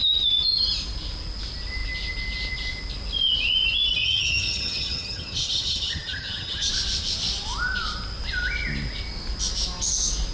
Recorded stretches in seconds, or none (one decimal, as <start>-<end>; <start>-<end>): 0.0-4.0; 6.7-10.3